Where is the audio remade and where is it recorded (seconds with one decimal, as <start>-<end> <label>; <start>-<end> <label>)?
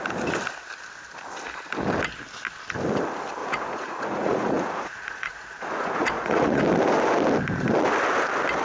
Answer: 0.0-3.4 recorded; 3.4-6.6 remade; 6.6-8.6 recorded